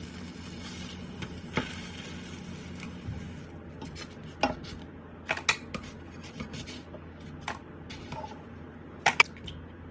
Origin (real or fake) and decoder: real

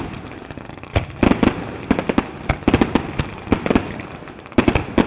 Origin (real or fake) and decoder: real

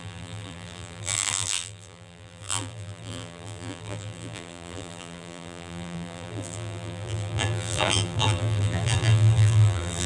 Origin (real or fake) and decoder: fake, vocoder, BigVGAN v2